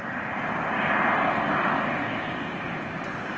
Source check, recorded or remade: recorded